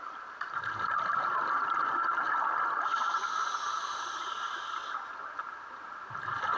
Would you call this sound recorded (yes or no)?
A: yes